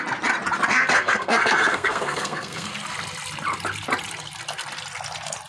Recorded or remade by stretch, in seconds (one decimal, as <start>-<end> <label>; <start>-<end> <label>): 0.0-0.7 recorded; 0.7-2.7 remade; 2.7-5.5 recorded